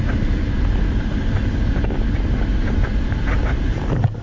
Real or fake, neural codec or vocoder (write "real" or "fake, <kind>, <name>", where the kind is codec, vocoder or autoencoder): real